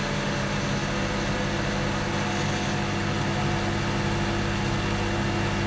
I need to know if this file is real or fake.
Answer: real